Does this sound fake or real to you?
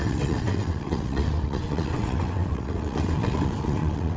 fake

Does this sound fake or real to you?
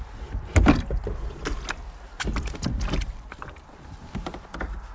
real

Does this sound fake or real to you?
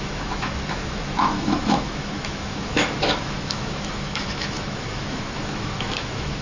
fake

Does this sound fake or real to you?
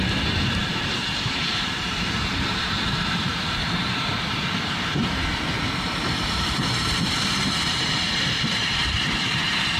fake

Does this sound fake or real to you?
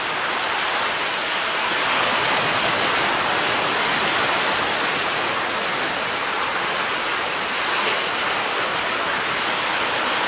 real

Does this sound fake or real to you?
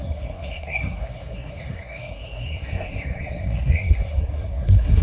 fake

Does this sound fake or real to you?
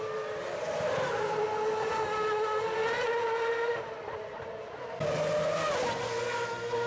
real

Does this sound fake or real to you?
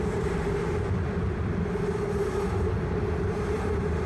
real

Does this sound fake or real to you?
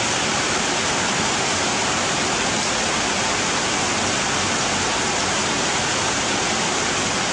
real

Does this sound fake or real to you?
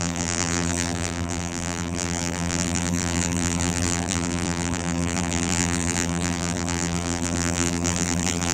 fake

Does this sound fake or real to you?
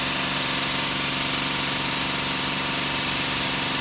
real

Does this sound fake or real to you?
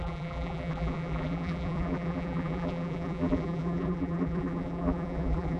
fake